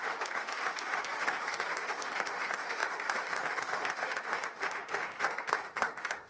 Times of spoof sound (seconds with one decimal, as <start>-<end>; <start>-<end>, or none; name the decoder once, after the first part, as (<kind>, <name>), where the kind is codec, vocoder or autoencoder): 0.0-6.3 (autoencoder, DAC-VAE)